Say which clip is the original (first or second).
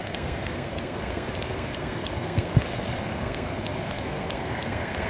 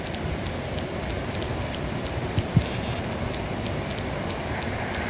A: second